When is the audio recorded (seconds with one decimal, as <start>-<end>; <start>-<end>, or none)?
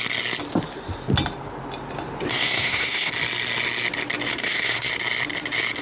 0.0-2.3; 3.1-4.3; 4.9-5.8